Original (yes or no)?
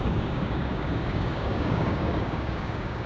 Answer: no